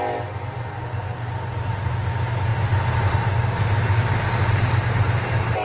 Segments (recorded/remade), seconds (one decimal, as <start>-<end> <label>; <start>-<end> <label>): 0.0-5.6 recorded